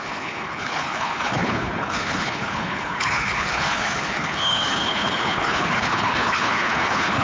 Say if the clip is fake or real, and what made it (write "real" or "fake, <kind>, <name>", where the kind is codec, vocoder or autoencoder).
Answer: fake, codec, HILCodec